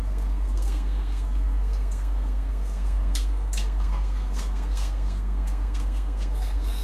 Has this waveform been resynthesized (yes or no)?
yes